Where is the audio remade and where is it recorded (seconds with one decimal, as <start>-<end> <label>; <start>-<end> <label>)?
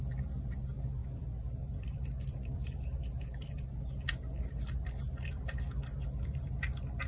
0.0-1.0 recorded; 1.0-3.7 remade; 3.7-7.1 recorded